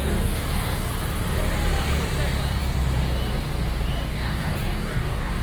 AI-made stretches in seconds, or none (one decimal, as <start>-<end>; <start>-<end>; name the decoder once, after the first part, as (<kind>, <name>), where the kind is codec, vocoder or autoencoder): 0.0-0.9 (codec, DAC); 4.1-5.4